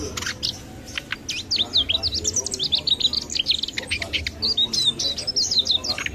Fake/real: real